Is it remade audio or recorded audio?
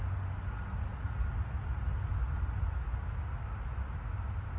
recorded